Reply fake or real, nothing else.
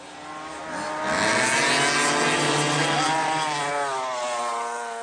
real